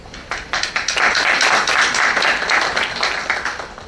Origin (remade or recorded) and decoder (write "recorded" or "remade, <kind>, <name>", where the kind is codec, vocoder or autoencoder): remade, vocoder, BigVGAN v2